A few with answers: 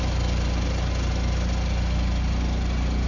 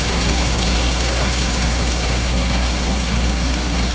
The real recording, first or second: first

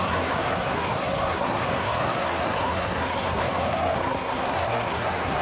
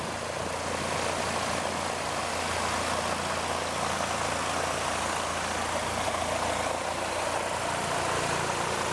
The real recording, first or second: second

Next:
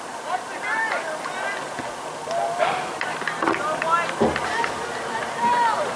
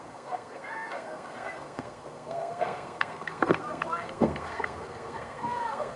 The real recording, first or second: first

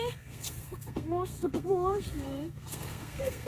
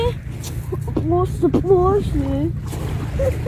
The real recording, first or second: second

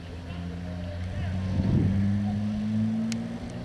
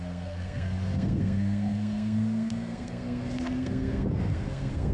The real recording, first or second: first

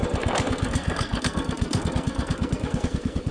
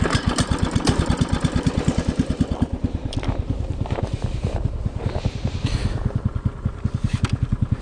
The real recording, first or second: second